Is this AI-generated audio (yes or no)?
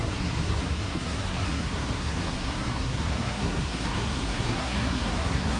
yes